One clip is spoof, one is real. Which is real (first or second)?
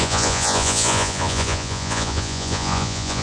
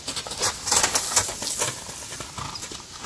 second